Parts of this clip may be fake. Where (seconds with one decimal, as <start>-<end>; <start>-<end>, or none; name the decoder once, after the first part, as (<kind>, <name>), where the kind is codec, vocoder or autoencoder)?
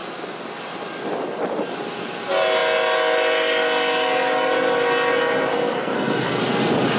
5.5-6.4 (codec, SNAC)